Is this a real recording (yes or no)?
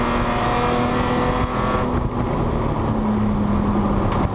yes